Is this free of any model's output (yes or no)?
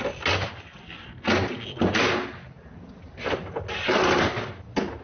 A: yes